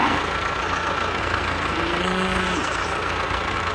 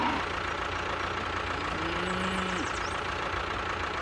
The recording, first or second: second